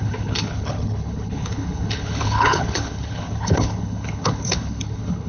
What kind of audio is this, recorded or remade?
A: remade